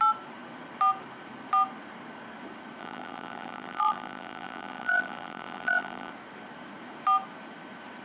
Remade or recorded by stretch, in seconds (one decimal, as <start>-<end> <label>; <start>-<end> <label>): 0.0-2.8 recorded; 2.8-6.1 remade; 6.1-8.0 recorded